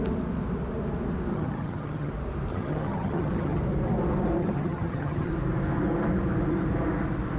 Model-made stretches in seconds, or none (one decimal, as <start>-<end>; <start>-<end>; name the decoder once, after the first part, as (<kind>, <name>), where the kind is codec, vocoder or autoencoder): 1.3-2.1 (vocoder, HiFi-GAN); 2.5-3.6; 4.4-5.3